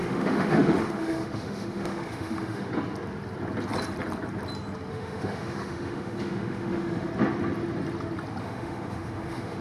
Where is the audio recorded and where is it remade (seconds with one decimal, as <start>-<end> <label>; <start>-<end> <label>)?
0.0-2.7 remade; 2.7-4.9 recorded; 4.9-7.1 remade; 7.1-8.4 recorded; 8.4-9.6 remade